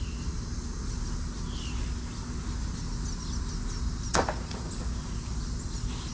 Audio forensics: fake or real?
real